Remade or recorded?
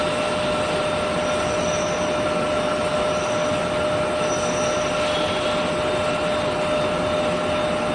recorded